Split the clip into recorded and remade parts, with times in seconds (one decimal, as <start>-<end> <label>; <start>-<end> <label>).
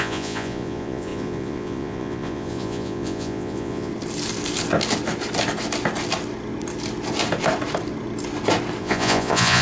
0.0-3.9 remade; 3.9-8.8 recorded; 8.8-9.6 remade